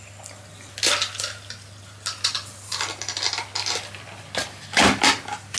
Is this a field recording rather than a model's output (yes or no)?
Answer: yes